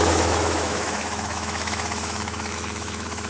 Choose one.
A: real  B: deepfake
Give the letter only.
B